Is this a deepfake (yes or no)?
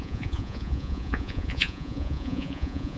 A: yes